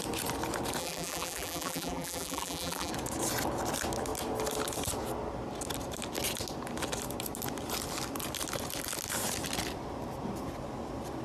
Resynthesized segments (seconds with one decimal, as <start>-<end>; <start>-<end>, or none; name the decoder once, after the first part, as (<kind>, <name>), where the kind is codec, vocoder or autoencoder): 0.8-2.9 (vocoder, BigVGAN v2)